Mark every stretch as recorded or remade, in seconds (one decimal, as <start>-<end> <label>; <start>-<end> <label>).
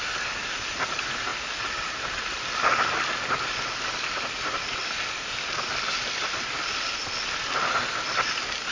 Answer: 0.0-8.7 recorded